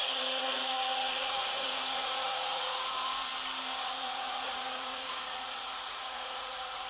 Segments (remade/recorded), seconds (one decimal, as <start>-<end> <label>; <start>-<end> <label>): 0.0-3.3 remade; 3.3-3.8 recorded; 3.8-6.9 remade